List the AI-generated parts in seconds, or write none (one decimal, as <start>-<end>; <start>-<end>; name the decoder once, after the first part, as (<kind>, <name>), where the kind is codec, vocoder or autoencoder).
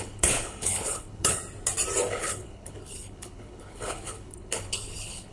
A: 0.0-1.4 (codec, HILCodec); 2.1-5.3